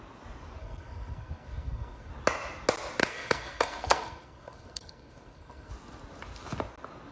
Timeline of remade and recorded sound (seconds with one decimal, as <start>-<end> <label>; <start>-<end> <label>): 0.0-0.6 recorded; 0.6-2.1 remade; 2.1-3.0 recorded; 3.0-5.7 remade; 5.7-7.1 recorded